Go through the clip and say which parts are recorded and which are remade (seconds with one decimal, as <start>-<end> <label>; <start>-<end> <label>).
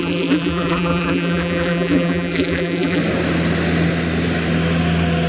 0.0-3.0 remade; 3.0-5.3 recorded